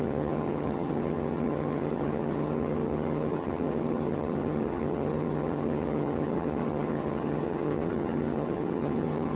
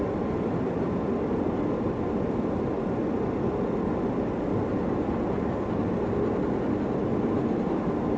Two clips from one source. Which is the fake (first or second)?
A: first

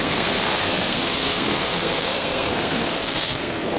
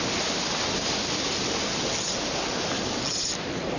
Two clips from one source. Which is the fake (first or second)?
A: first